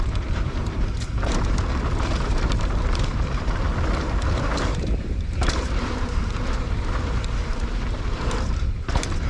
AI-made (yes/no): yes